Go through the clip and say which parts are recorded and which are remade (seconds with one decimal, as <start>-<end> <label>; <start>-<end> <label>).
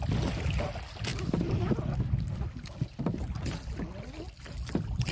0.0-5.1 recorded